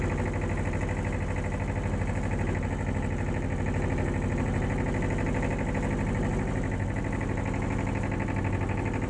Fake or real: real